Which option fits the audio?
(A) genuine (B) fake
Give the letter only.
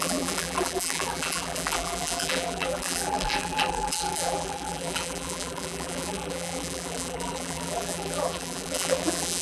B